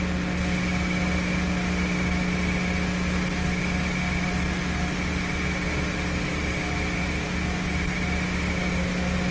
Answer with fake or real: real